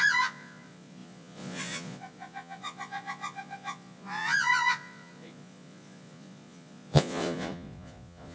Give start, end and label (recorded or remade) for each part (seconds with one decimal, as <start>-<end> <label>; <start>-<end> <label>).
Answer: 0.0-8.3 remade